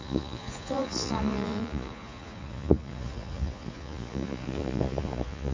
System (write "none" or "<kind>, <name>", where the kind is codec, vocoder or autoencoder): vocoder, Vocos